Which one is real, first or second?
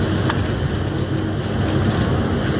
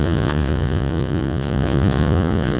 first